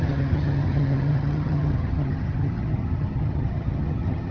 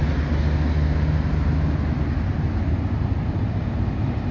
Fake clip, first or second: first